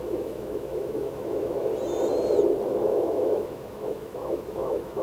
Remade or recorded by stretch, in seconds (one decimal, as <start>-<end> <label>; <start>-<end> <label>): 0.0-1.7 remade; 1.7-2.7 recorded; 2.7-5.0 remade